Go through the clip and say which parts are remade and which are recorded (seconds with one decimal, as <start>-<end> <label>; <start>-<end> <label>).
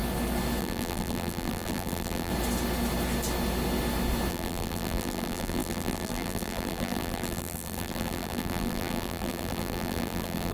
0.0-0.6 recorded; 0.6-2.3 remade; 2.3-4.3 recorded; 4.3-10.5 remade